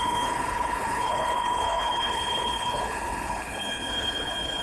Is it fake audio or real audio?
fake